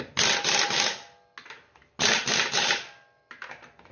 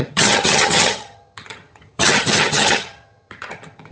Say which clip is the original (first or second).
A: first